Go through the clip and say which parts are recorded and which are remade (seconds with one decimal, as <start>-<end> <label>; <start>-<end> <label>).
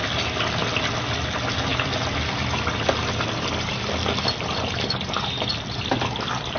0.0-0.8 remade; 0.8-1.7 recorded; 1.7-5.5 remade; 5.5-6.6 recorded